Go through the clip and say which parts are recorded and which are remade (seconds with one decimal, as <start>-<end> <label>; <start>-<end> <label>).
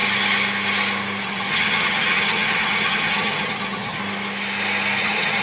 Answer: 0.0-1.2 recorded; 1.2-4.0 remade; 4.0-5.0 recorded; 5.0-5.4 remade